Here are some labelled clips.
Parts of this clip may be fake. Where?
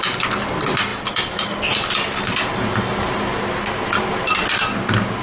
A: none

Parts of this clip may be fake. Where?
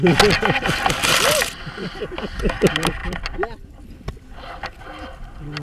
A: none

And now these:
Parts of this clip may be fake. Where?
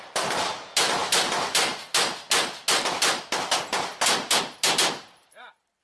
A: none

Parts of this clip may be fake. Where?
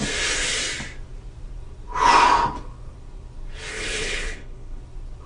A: 3.7-4.8 (codec, HILCodec)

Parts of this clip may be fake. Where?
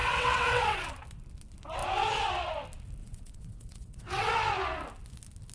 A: 0.0-0.9 (vocoder, WaveNeXt); 3.0-4.3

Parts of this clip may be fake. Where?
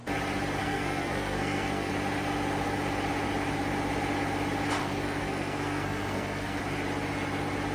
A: 0.6-1.9 (codec, SNAC); 4.8-6.6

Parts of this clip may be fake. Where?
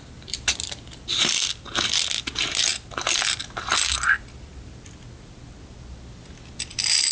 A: none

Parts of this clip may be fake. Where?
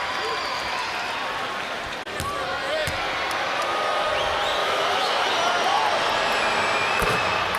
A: 4.6-5.2 (autoencoder, DAC-VAE)